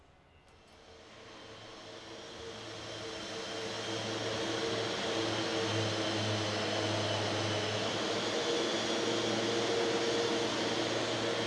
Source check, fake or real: real